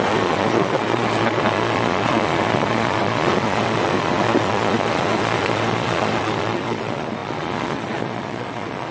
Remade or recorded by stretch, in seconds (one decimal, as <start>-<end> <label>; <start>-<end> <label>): 0.0-8.9 remade